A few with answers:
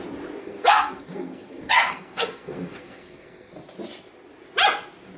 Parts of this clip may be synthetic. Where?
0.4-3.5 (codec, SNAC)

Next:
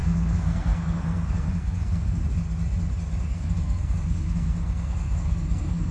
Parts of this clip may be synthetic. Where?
0.0-2.2 (codec, SNAC); 3.2-5.9

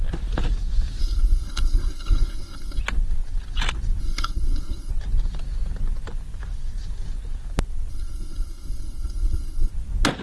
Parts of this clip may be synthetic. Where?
1.0-2.8 (codec, SNAC); 4.0-4.9; 7.9-9.7

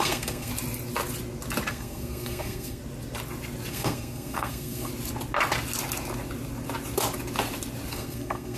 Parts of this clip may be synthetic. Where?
0.0-0.5 (codec, SNAC); 1.7-2.8; 3.7-4.9; 7.9-8.6